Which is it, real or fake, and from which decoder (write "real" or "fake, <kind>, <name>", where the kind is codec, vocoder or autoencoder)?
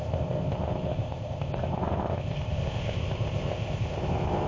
fake, codec, ZipCodec